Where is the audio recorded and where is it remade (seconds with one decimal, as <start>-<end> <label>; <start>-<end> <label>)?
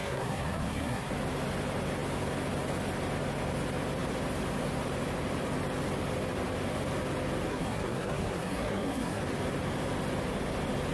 0.0-1.1 remade; 1.1-7.5 recorded; 7.5-9.2 remade; 9.2-10.9 recorded